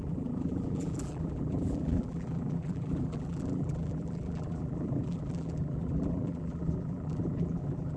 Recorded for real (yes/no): no